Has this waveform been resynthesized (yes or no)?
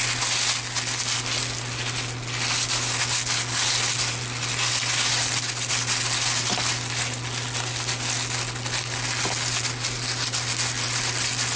no